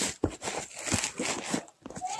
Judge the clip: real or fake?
real